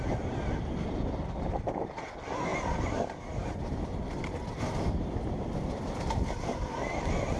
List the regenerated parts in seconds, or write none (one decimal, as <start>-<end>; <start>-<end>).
none